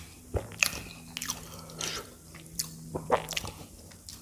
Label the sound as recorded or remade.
recorded